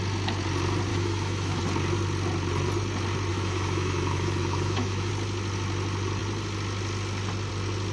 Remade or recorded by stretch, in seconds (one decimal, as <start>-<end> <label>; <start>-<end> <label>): 0.0-0.9 recorded; 0.9-1.6 remade; 1.6-3.3 recorded; 3.3-5.1 remade; 5.1-7.9 recorded